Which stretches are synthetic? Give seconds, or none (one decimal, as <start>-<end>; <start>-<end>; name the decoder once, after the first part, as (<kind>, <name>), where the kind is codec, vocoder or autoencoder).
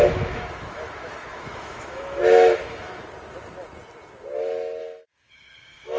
0.0-3.1 (autoencoder, DAC-VAE); 4.8-6.0